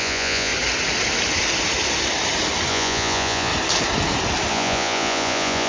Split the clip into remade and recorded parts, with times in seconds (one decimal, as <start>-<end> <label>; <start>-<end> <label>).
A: 0.0-0.5 remade; 0.5-2.7 recorded; 2.7-3.5 remade; 3.5-4.5 recorded; 4.5-5.7 remade

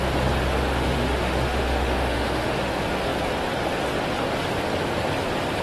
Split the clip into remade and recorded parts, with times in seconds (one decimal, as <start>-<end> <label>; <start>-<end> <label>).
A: 0.0-0.7 recorded; 0.7-2.7 remade; 2.7-5.6 recorded

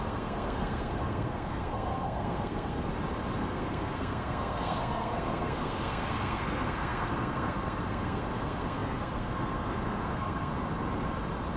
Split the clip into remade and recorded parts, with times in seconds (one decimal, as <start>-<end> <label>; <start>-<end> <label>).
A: 0.0-2.9 remade; 2.9-3.4 recorded; 3.4-10.5 remade; 10.5-11.6 recorded

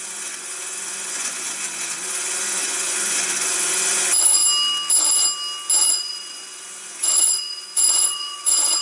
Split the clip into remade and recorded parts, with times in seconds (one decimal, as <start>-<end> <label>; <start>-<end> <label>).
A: 0.0-4.4 remade; 4.4-5.9 recorded; 5.9-8.8 remade

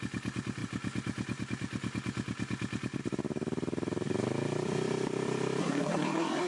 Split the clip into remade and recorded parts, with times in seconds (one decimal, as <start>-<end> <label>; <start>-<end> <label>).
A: 0.0-5.6 recorded; 5.6-6.5 remade

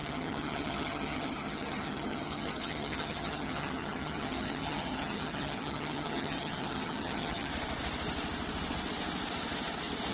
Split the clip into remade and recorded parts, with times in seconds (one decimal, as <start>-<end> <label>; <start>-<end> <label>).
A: 0.0-7.5 remade; 7.5-10.1 recorded